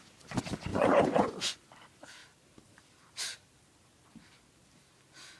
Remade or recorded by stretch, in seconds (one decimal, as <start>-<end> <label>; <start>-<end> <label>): 0.0-0.7 recorded; 0.7-1.6 remade; 1.6-5.4 recorded